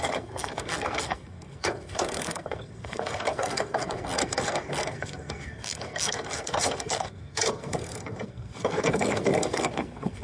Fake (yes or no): yes